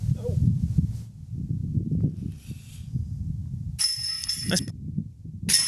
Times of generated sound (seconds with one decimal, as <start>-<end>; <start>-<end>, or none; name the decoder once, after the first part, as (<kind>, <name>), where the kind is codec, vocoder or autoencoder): none